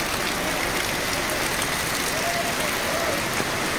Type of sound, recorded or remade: recorded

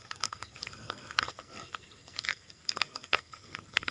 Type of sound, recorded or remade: remade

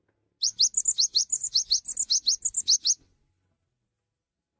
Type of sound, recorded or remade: recorded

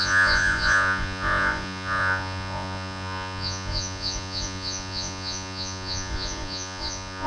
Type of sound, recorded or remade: remade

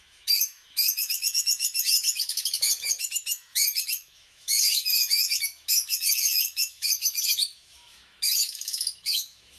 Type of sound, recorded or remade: remade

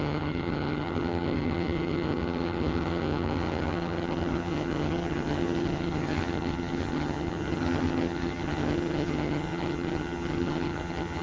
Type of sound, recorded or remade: remade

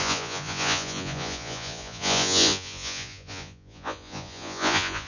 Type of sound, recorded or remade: remade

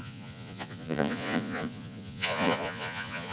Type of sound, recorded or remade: remade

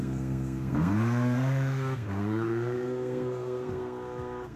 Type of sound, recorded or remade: remade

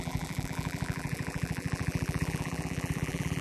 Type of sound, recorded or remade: remade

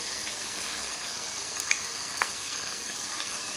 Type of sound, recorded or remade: remade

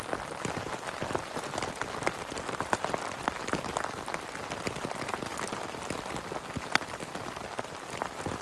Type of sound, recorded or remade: recorded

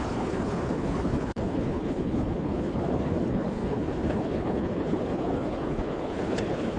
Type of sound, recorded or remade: remade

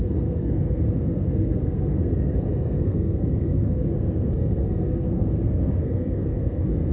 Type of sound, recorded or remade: remade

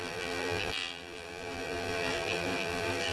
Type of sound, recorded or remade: remade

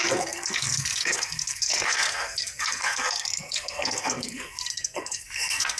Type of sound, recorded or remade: remade